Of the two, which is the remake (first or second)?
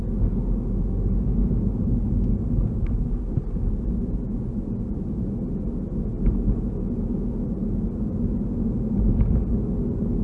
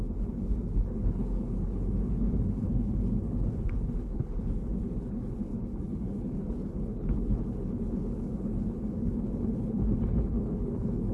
second